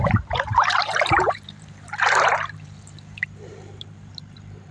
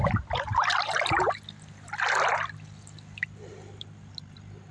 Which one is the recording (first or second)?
second